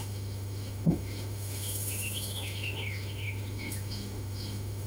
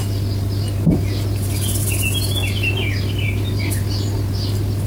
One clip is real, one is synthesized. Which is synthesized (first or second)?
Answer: first